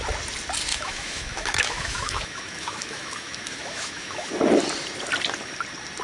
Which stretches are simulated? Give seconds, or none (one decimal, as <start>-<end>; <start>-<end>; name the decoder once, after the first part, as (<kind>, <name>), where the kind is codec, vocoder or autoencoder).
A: 0.7-4.3 (autoencoder, DAC-VAE)